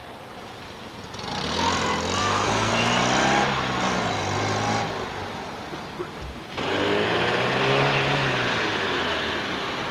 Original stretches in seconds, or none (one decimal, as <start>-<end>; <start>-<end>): 0.0-2.2; 2.7-9.9